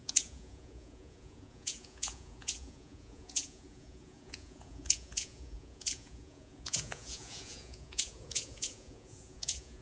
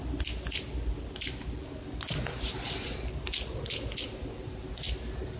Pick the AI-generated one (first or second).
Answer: first